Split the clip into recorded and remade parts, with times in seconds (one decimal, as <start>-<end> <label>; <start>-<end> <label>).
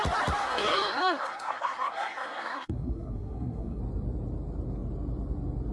0.0-0.4 recorded; 0.4-3.8 remade; 3.8-5.7 recorded